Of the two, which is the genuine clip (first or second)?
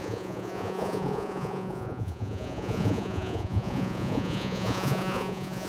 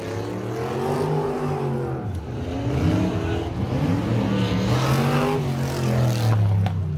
second